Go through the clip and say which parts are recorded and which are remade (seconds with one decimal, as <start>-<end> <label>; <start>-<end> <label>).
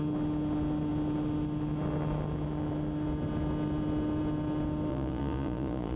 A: 0.0-4.9 recorded; 4.9-6.0 remade